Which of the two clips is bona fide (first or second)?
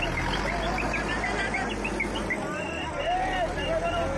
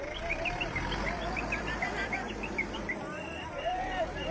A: first